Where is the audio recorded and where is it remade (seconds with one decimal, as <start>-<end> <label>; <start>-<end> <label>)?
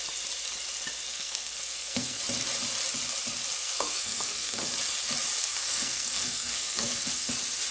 0.0-1.1 recorded; 1.1-2.2 remade; 2.2-3.6 recorded; 3.6-4.6 remade; 4.6-5.4 recorded; 5.4-7.3 remade; 7.3-7.7 recorded